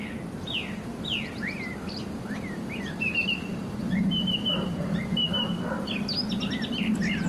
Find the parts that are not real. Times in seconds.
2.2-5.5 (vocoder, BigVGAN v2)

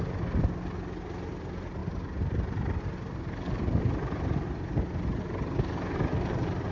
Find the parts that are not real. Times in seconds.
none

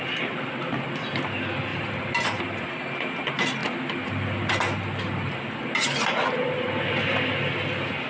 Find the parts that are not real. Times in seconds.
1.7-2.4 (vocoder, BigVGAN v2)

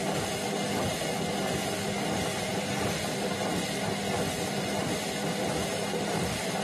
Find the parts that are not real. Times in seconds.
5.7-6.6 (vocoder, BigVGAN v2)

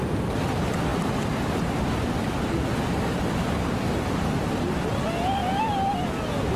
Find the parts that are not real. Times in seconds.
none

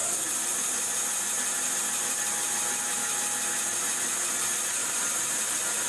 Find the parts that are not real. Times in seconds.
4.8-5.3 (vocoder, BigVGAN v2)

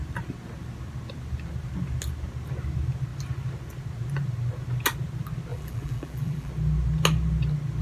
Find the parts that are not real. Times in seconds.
5.5-6.5 (vocoder, BigVGAN v2)